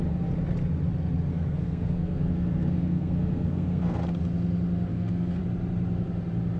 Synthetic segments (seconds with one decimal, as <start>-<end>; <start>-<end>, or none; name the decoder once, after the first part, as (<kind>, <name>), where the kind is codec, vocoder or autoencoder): 1.3-4.0 (codec, SNAC); 4.9-5.4